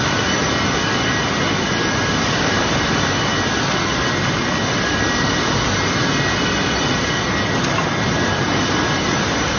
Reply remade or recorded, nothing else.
recorded